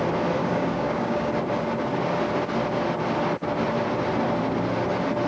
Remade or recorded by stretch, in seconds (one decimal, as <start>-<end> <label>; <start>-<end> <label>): 0.0-0.4 recorded; 0.4-1.3 remade; 1.3-5.3 recorded